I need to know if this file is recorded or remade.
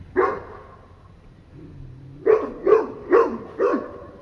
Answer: recorded